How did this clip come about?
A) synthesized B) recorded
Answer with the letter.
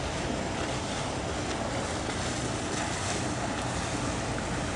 B